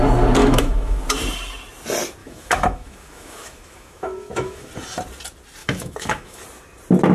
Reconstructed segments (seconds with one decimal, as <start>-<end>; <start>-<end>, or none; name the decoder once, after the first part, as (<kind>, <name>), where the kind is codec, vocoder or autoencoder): 0.4-1.0 (autoencoder, DAC-VAE); 2.2-4.7; 5.6-6.4